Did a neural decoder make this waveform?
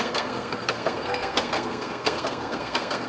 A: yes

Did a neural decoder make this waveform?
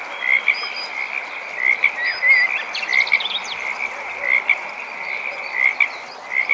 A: no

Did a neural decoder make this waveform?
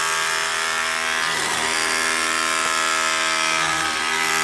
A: no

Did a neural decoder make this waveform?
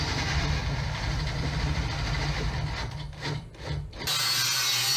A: no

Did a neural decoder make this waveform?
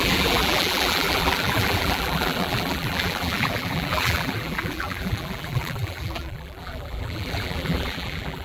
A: yes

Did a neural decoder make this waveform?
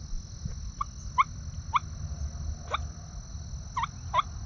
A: no